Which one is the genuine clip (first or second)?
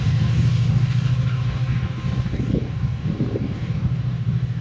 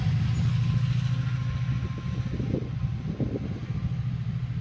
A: second